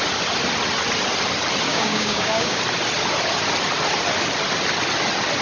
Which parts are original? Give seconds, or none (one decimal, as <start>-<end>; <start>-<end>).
0.0-1.7; 2.6-5.4